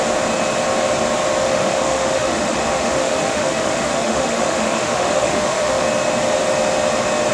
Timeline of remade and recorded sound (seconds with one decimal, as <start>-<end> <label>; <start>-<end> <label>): 0.0-1.4 recorded; 1.4-5.8 remade; 5.8-7.3 recorded